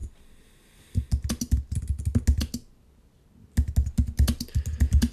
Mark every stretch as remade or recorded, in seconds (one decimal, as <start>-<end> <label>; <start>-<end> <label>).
0.0-5.1 recorded